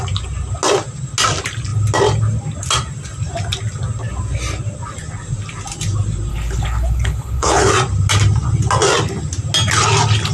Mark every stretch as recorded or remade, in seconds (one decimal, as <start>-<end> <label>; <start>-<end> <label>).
0.0-6.3 recorded; 6.3-7.7 remade; 7.7-10.3 recorded